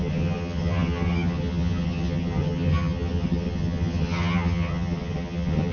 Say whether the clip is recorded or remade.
remade